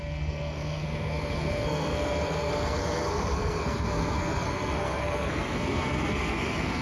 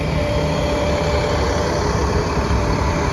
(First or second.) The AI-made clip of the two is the first